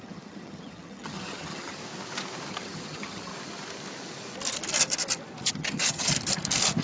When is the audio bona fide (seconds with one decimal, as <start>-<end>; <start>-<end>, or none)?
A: 1.8-2.5; 3.3-5.5; 6.1-6.8